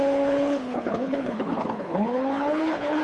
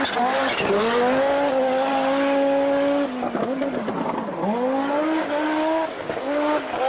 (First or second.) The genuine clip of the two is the second